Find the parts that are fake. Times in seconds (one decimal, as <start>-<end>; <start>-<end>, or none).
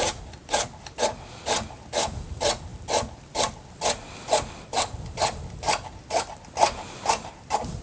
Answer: none